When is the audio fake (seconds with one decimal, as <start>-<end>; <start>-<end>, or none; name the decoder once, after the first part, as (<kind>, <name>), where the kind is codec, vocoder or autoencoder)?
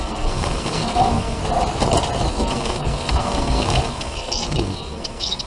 0.0-1.4 (codec, SNAC); 2.3-5.5